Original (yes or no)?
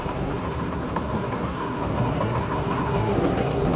no